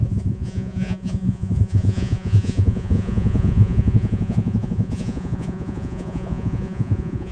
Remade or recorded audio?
remade